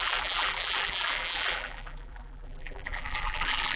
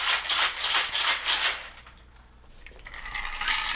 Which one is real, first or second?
second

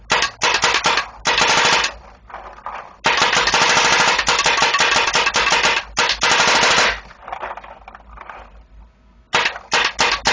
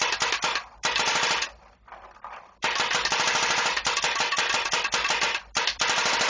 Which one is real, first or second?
first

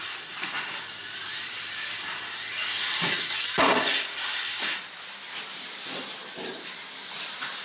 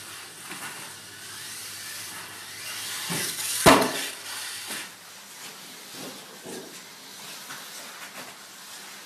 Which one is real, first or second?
second